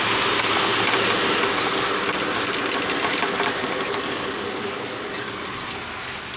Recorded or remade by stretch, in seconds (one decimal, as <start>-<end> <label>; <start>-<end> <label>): 0.0-3.1 recorded; 3.1-5.3 remade; 5.3-6.4 recorded